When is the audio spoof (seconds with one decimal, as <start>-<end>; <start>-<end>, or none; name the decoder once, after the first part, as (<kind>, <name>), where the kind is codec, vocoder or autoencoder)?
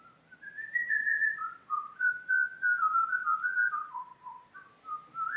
0.8-2.1 (vocoder, Vocos); 3.8-4.7